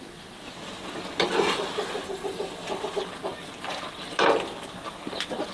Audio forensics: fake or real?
real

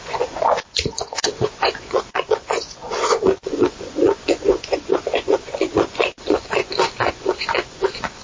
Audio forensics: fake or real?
fake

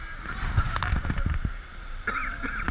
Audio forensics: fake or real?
real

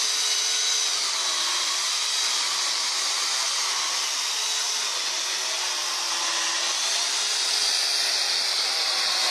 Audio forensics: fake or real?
real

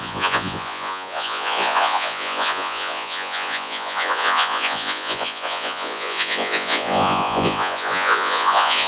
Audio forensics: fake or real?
fake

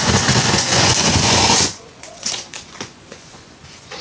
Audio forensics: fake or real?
fake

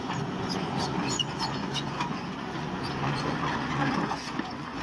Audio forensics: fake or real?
fake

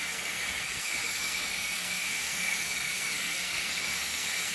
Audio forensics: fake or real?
fake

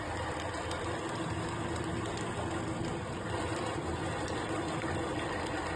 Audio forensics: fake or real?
real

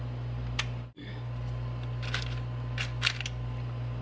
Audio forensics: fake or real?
real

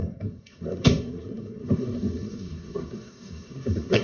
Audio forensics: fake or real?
fake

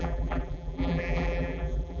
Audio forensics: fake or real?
fake